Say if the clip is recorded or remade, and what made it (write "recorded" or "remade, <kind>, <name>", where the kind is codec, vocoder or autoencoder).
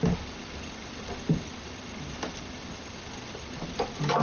recorded